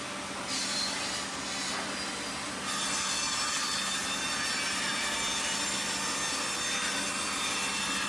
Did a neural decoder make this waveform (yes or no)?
no